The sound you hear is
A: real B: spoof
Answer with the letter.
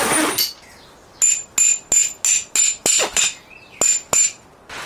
A